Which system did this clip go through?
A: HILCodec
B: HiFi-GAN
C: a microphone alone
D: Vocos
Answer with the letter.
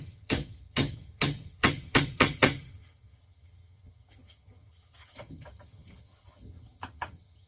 B